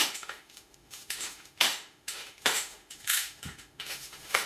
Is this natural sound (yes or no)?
no